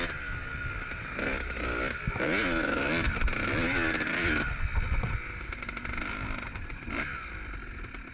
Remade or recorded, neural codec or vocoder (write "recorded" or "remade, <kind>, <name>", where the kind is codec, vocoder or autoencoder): recorded